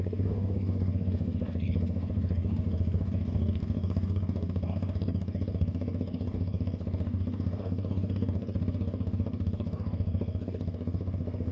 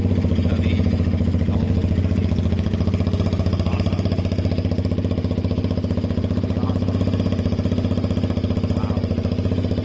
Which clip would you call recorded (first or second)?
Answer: second